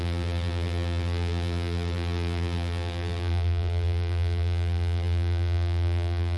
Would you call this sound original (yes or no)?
no